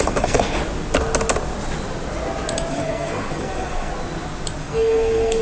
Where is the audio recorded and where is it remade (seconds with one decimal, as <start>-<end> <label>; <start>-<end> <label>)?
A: 0.0-0.6 remade; 0.6-2.7 recorded; 2.7-3.9 remade; 3.9-4.6 recorded; 4.6-5.4 remade